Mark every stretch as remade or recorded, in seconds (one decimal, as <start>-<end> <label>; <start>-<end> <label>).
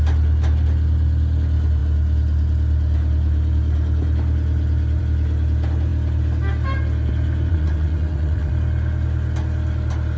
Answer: 0.0-7.5 recorded; 7.5-8.5 remade; 8.5-10.2 recorded